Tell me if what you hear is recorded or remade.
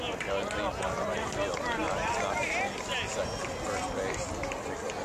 recorded